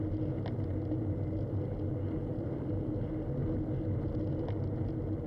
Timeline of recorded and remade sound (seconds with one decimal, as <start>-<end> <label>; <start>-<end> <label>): 0.0-2.3 recorded; 2.3-2.9 remade; 2.9-5.3 recorded